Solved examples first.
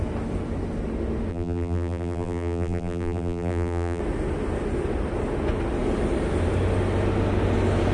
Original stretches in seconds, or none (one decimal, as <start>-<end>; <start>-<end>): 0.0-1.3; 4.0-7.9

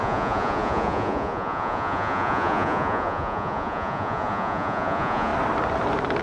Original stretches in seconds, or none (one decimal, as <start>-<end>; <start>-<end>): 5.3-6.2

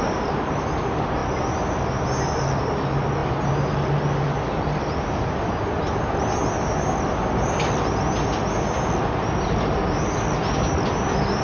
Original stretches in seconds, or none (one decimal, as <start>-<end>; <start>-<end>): 0.0-11.4